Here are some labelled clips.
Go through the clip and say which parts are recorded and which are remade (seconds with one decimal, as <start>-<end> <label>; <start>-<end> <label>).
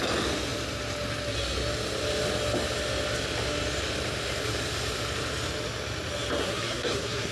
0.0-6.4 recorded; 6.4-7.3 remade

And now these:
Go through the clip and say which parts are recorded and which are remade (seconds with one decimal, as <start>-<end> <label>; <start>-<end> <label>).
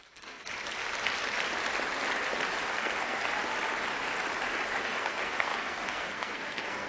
0.0-0.4 remade; 0.4-2.7 recorded; 2.7-3.3 remade; 3.3-4.8 recorded; 4.8-6.9 remade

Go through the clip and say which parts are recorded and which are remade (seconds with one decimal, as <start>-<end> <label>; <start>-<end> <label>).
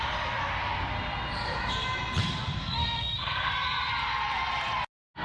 0.0-2.6 recorded; 2.6-3.5 remade; 3.5-5.2 recorded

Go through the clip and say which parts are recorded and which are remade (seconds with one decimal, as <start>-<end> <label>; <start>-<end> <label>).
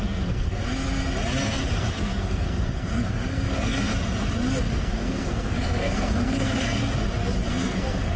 0.0-0.6 remade; 0.6-1.8 recorded; 1.8-3.9 remade; 3.9-4.6 recorded; 4.6-6.8 remade; 6.8-7.5 recorded; 7.5-8.2 remade